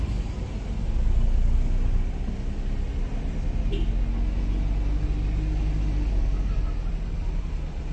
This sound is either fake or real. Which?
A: real